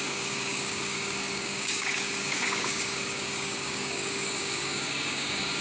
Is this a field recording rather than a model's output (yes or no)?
no